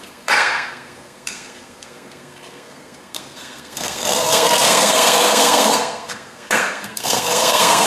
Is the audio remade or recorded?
remade